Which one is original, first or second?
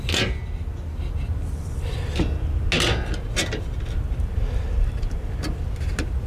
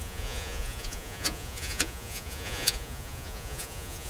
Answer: first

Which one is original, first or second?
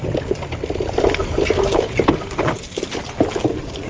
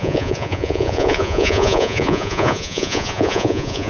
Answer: first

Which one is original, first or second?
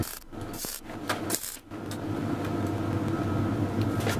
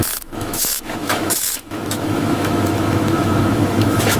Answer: first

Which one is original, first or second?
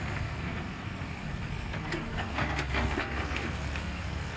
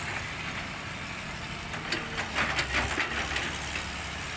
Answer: second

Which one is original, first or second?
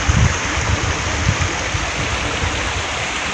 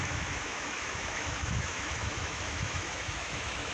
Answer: first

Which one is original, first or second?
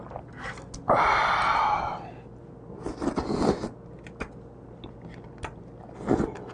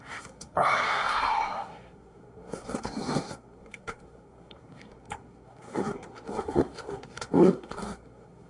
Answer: first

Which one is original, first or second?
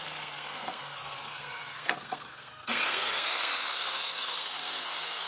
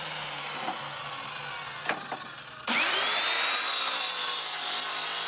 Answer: second